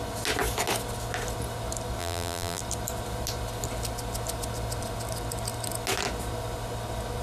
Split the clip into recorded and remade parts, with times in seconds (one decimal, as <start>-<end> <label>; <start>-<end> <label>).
0.0-2.0 recorded; 2.0-2.6 remade; 2.6-7.2 recorded